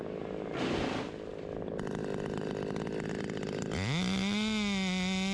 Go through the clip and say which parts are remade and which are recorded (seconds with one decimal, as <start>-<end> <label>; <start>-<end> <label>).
0.0-5.3 recorded

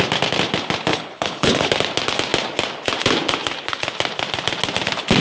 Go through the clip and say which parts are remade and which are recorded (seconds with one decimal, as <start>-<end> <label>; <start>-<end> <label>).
0.0-0.9 recorded; 0.9-1.7 remade; 1.7-5.2 recorded

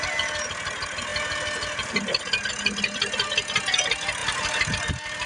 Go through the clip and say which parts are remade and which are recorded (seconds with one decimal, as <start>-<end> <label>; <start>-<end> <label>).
0.0-5.3 recorded